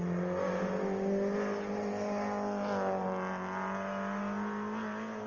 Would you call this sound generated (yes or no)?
no